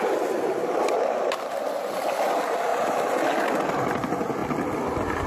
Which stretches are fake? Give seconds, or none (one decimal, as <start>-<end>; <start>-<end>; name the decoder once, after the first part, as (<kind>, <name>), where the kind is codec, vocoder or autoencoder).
none